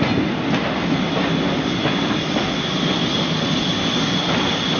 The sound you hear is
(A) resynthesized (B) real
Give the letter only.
B